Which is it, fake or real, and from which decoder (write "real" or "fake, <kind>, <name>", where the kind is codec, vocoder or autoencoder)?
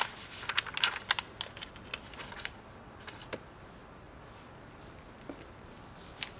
real